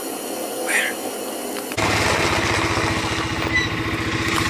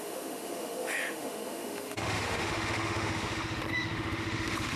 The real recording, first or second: first